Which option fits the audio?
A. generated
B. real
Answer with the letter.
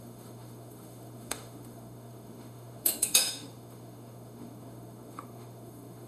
A